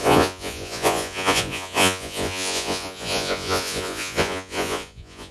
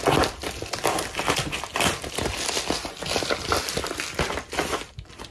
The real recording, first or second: second